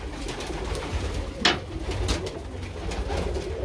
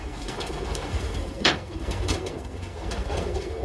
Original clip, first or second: first